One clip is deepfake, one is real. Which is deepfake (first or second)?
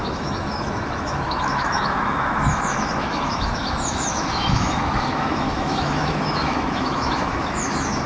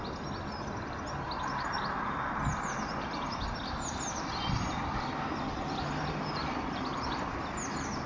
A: first